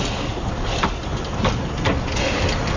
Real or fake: real